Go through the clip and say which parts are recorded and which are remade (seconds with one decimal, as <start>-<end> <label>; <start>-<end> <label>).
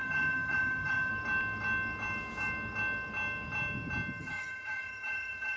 0.0-1.1 remade; 1.1-4.2 recorded; 4.2-5.6 remade